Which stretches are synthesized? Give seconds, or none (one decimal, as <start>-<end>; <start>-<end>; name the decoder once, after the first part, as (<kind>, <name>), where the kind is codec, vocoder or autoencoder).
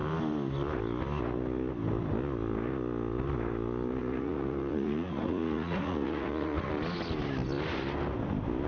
4.0-6.7 (vocoder, Vocos)